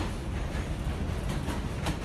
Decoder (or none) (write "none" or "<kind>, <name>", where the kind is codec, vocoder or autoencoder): none